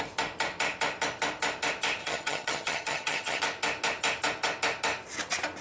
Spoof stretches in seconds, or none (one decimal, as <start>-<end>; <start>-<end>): 2.0-3.4